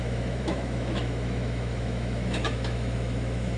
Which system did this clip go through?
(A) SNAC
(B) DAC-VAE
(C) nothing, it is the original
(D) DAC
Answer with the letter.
B